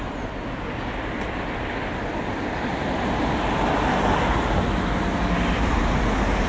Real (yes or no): yes